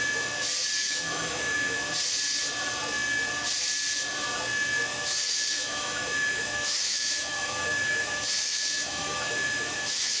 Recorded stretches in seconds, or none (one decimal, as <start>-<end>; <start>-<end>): 0.0-0.8; 1.9-4.9

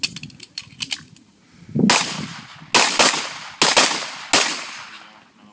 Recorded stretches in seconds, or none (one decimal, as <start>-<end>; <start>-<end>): 0.0-5.5

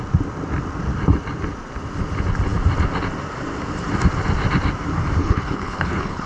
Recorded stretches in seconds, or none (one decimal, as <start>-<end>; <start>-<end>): 0.0-5.2

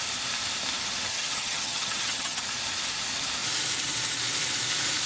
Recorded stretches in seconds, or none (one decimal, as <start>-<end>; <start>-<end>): 0.0-1.1; 2.4-5.1

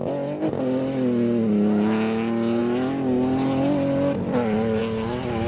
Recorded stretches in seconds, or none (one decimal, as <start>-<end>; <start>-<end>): 0.0-5.5

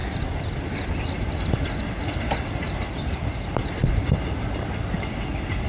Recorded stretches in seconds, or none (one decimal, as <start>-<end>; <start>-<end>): 0.7-5.7

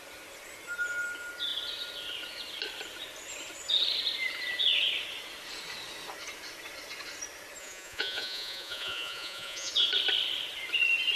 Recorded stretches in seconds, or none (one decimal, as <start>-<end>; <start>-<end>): 0.0-7.6; 9.7-11.2